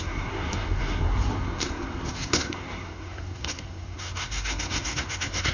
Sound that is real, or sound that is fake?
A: fake